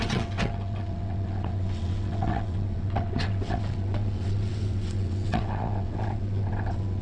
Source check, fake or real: fake